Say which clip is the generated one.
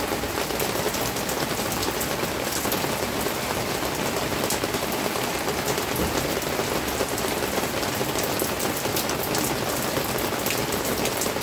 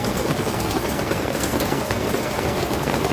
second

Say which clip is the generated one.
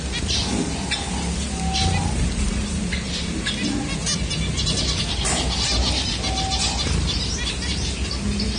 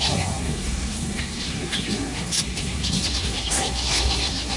second